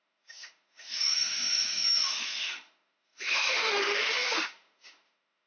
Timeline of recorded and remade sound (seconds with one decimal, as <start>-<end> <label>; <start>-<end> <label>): 0.0-5.5 remade